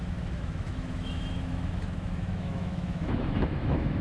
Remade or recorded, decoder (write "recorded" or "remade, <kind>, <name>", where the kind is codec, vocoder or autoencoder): remade, autoencoder, DAC-VAE